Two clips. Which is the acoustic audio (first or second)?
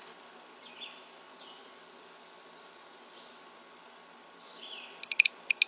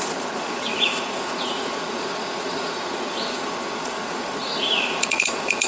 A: first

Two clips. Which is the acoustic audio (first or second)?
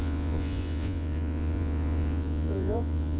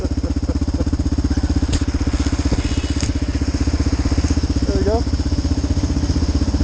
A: second